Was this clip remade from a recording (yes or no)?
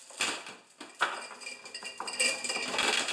no